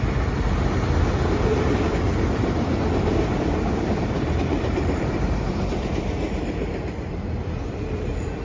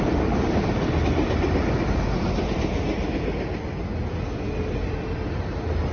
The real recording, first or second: second